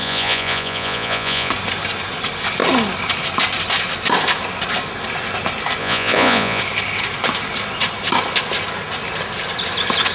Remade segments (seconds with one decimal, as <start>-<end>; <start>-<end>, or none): 0.0-1.5; 5.8-6.6